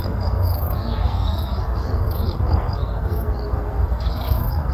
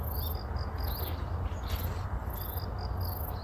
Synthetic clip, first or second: first